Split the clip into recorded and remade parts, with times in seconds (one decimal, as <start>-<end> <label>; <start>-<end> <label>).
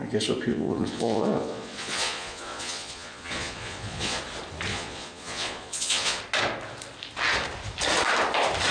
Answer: 0.0-0.5 recorded; 0.5-4.2 remade; 4.2-4.7 recorded; 4.7-6.2 remade; 6.2-8.7 recorded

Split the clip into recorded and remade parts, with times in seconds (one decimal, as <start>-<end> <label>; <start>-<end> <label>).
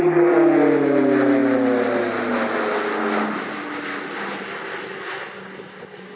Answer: 0.0-6.2 recorded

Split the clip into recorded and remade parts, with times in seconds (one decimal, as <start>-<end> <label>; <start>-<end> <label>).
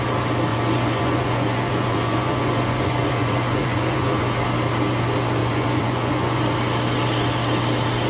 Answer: 0.0-0.5 recorded; 0.5-4.2 remade; 4.2-5.4 recorded; 5.4-6.4 remade; 6.4-8.1 recorded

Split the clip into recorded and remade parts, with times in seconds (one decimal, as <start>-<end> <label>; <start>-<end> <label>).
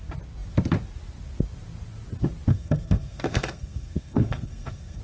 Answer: 0.0-2.5 recorded; 2.5-5.0 remade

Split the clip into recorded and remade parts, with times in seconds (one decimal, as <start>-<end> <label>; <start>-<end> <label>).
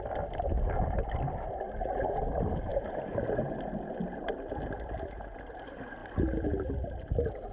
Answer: 0.0-7.5 recorded